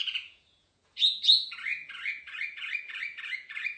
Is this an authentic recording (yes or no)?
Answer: no